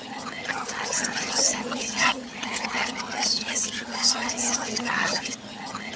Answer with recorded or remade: remade